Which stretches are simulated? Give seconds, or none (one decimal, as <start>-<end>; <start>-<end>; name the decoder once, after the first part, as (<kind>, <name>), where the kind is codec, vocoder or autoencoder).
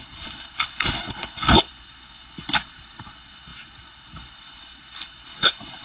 0.0-5.8 (codec, HILCodec)